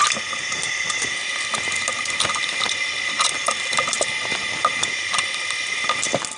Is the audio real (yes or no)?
yes